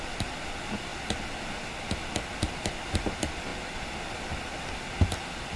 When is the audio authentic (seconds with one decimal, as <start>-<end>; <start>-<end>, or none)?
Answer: 0.0-5.6